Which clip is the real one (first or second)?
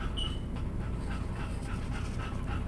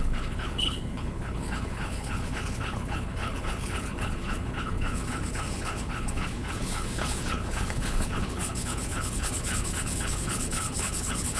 first